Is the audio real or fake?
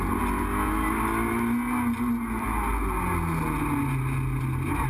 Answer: real